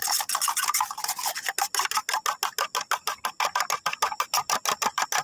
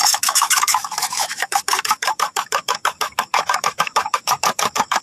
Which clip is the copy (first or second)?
second